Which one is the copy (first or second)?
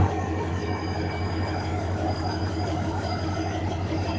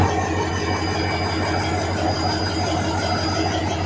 first